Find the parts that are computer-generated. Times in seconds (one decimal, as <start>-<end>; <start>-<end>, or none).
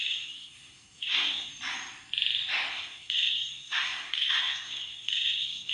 0.0-1.5; 2.7-5.7